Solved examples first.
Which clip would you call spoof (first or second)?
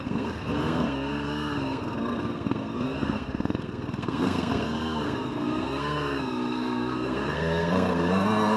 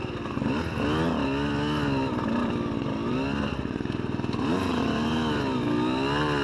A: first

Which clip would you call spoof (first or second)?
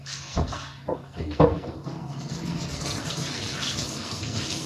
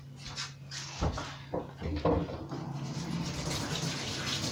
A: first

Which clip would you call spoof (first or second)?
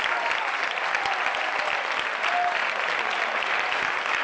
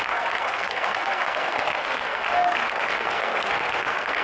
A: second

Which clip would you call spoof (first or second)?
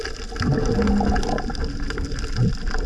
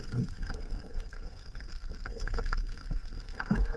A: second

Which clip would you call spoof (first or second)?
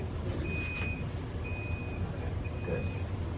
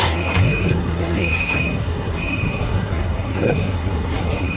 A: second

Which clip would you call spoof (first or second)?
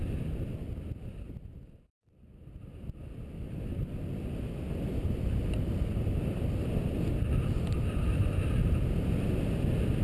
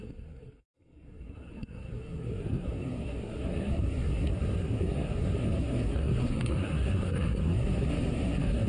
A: second